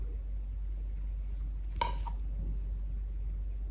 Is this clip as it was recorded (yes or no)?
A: yes